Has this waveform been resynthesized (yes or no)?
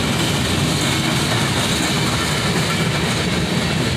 no